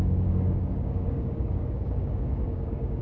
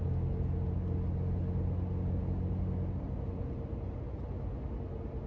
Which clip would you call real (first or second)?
second